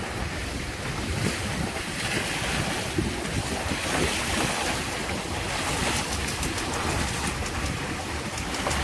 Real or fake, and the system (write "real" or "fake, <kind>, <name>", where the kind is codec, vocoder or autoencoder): real